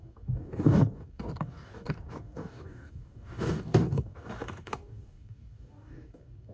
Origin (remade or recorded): remade